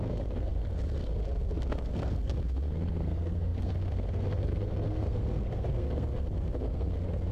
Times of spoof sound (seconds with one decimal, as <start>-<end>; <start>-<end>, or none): 0.0-7.3